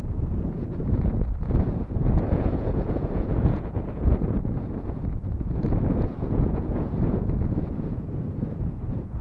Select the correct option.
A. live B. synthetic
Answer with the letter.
B